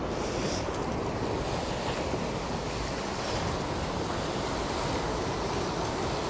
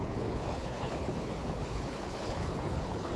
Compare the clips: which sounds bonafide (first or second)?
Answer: first